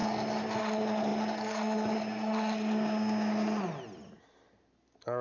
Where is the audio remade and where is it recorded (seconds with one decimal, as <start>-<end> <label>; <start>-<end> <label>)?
0.0-5.2 recorded